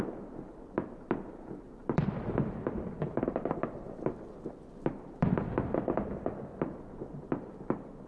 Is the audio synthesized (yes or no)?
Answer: yes